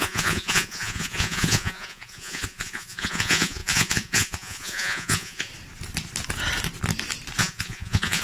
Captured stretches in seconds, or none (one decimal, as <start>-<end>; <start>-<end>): 5.5-7.4